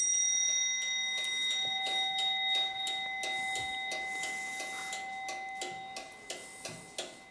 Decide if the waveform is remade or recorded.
recorded